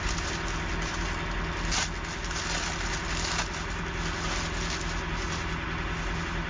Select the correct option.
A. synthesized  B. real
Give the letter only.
B